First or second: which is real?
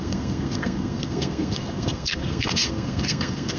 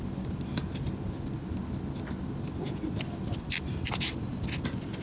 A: second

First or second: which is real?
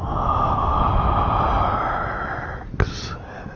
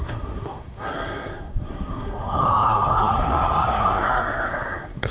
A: first